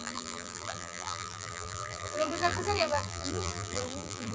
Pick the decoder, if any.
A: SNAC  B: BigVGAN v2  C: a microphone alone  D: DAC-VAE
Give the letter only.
B